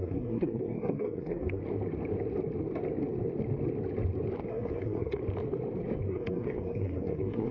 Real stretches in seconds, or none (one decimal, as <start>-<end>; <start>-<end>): 1.6-4.5; 5.2-6.1